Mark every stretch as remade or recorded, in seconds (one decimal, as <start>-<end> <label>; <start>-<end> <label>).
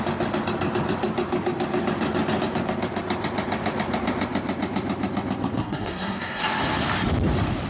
0.0-5.6 recorded; 5.6-6.4 remade; 6.4-7.7 recorded